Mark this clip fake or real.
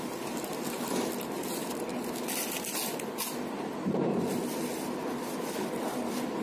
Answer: real